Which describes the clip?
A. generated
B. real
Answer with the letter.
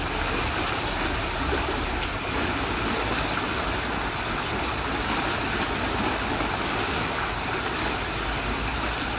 B